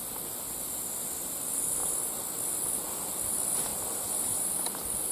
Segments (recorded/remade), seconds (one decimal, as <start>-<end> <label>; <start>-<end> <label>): 0.0-5.1 recorded